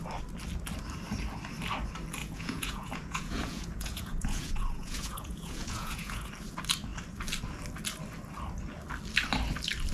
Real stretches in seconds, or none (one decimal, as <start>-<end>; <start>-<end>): 0.0-2.2; 6.3-9.9